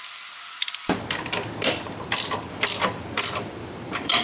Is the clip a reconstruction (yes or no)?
yes